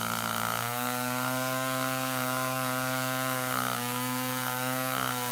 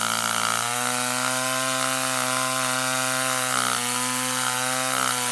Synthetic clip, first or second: first